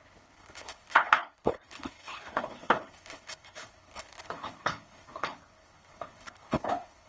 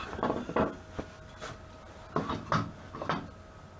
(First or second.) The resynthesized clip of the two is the first